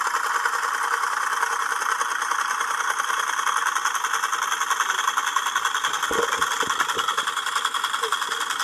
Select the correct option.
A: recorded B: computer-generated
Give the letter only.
A